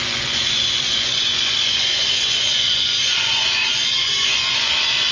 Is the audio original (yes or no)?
no